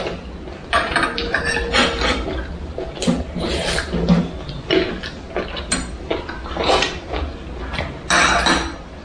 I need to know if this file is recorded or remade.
recorded